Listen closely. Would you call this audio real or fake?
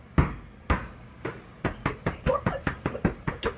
real